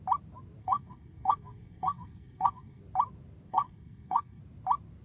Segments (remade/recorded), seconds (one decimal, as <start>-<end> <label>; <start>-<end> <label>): 0.0-0.6 recorded; 0.6-2.8 remade; 2.8-3.5 recorded; 3.5-4.4 remade; 4.4-5.0 recorded